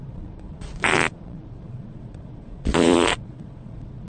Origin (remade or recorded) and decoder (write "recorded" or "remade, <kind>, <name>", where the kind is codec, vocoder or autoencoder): remade, vocoder, Vocos